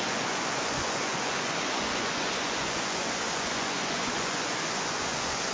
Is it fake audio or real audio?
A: fake